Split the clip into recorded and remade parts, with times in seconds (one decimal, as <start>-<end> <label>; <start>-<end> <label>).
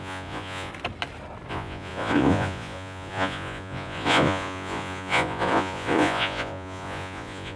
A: 0.0-0.7 remade; 0.7-1.5 recorded; 1.5-7.6 remade